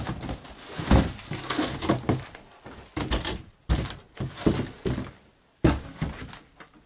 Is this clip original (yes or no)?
yes